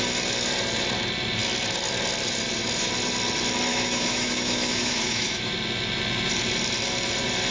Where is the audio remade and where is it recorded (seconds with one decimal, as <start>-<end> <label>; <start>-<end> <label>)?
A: 0.0-3.7 recorded; 3.7-5.5 remade; 5.5-7.5 recorded

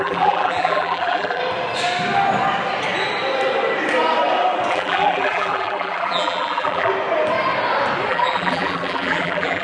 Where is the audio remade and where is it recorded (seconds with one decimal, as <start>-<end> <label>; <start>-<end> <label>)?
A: 0.0-1.4 remade; 1.4-4.7 recorded; 4.7-6.9 remade; 6.9-8.1 recorded; 8.1-9.6 remade

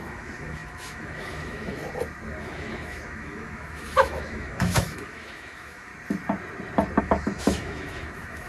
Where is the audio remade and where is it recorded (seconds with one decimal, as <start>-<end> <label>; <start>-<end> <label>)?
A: 0.0-1.8 remade; 1.8-2.4 recorded; 2.4-5.9 remade; 5.9-7.0 recorded; 7.0-8.5 remade

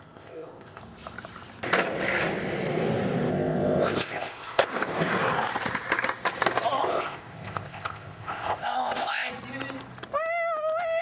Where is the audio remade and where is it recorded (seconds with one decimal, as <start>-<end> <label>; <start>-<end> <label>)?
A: 0.0-0.8 remade; 0.8-3.3 recorded; 3.3-4.7 remade; 4.7-6.8 recorded; 6.8-9.3 remade; 9.3-11.0 recorded

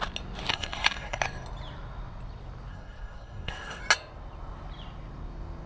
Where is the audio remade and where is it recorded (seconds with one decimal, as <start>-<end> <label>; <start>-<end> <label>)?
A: 0.0-0.5 recorded; 0.5-1.2 remade; 1.2-2.7 recorded; 2.7-3.8 remade; 3.8-5.7 recorded

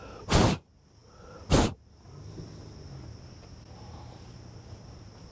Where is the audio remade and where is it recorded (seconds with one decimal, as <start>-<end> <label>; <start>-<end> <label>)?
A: 0.0-5.3 recorded